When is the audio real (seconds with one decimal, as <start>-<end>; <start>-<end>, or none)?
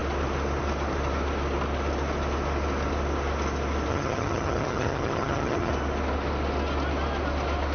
0.0-3.9; 5.7-7.7